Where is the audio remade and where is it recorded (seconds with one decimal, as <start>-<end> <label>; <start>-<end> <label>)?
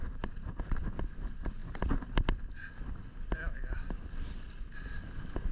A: 0.0-1.6 remade; 1.6-4.9 recorded; 4.9-5.5 remade